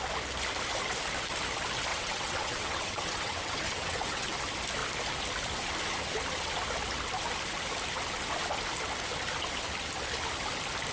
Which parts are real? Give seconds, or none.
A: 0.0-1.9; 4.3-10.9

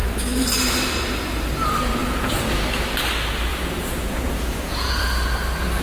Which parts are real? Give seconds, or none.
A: 0.0-2.0; 2.6-3.5; 5.0-5.8

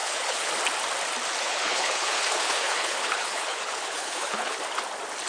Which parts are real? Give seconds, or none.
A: 0.5-1.4; 4.6-5.3

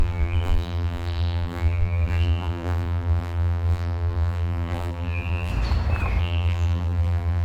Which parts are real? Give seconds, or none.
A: 5.5-6.2

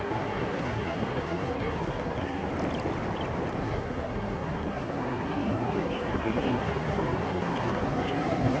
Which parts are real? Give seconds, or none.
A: 2.5-3.6

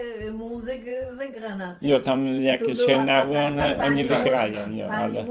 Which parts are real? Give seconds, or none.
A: 0.0-0.9; 4.1-5.3

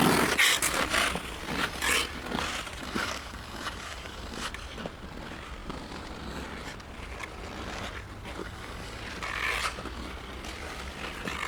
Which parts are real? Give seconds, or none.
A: 0.0-2.8; 4.5-8.4; 9.0-11.5